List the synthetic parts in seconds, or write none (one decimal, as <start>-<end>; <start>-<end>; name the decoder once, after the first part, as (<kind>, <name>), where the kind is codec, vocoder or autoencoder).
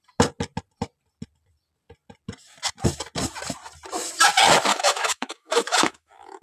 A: 4.7-6.4 (autoencoder, DAC-VAE)